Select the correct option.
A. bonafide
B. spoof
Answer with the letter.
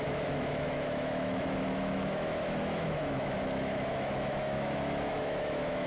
B